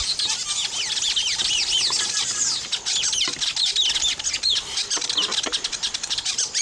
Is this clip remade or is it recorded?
recorded